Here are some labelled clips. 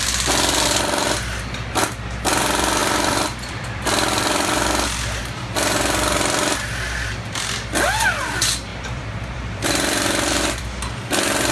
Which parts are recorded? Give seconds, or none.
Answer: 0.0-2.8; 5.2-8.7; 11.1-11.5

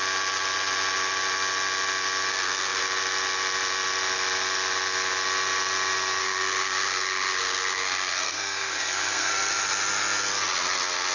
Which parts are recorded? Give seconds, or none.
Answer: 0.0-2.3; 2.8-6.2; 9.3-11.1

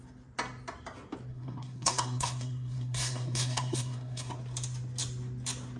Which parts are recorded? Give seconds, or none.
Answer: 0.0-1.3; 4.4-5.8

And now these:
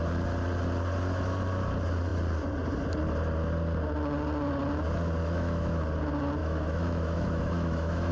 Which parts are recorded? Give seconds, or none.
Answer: 0.0-5.2; 5.8-6.4